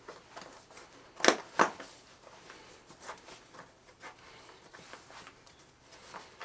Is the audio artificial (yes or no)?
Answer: no